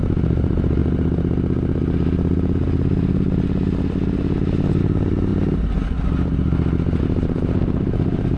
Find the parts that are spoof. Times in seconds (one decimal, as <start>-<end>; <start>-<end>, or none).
0.0-0.8; 4.8-5.3; 7.0-8.4